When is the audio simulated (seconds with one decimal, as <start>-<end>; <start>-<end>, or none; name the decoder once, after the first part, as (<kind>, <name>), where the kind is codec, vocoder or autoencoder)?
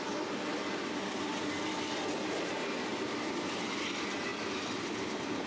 none